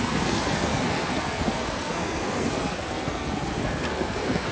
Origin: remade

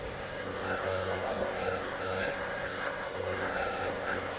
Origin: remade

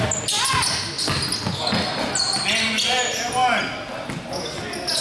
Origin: recorded